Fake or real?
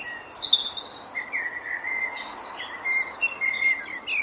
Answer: real